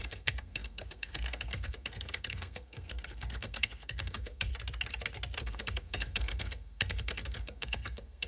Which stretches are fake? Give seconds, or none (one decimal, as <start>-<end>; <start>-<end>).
0.0-4.5; 5.4-8.3